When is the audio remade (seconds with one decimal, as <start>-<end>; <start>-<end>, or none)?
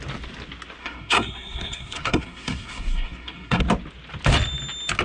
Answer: 0.8-3.6